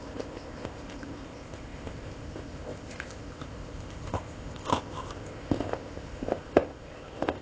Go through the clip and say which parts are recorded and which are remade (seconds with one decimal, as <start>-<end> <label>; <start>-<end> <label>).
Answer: 0.0-7.4 remade

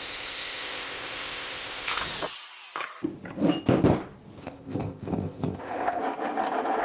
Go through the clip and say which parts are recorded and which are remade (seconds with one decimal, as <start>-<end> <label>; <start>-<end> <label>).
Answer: 0.0-2.0 remade; 2.0-4.4 recorded; 4.4-6.0 remade; 6.0-6.8 recorded

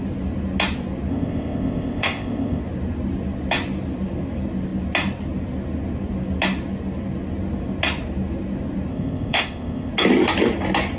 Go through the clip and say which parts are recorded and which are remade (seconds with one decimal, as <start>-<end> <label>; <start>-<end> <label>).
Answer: 0.0-1.1 recorded; 1.1-2.6 remade; 2.6-8.9 recorded; 8.9-9.9 remade; 9.9-11.0 recorded

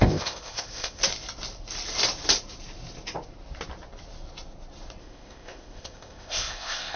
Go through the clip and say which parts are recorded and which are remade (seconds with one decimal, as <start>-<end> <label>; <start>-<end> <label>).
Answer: 0.0-1.0 remade; 1.0-5.0 recorded; 5.0-7.0 remade